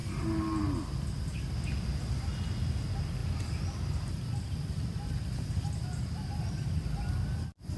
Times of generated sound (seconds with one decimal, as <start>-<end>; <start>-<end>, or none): 0.0-0.6